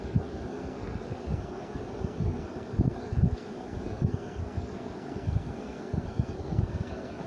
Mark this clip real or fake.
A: fake